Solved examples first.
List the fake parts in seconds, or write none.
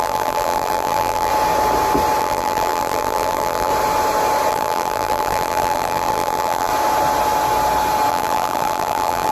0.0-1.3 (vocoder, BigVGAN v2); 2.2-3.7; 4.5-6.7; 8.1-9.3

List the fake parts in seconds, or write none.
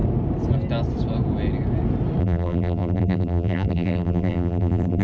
2.2-5.0 (vocoder, BigVGAN v2)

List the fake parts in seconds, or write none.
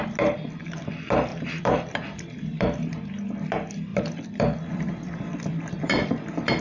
1.3-3.2 (vocoder, BigVGAN v2); 3.9-6.6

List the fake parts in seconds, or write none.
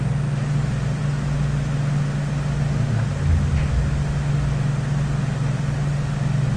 none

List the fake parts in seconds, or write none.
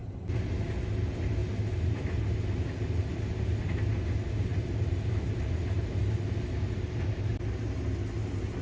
4.5-7.8 (vocoder, BigVGAN v2)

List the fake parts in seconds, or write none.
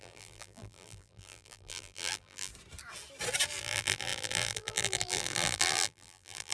0.0-2.5 (vocoder, BigVGAN v2); 3.6-6.5